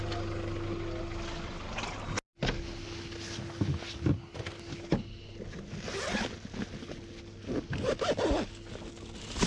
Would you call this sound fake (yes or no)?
no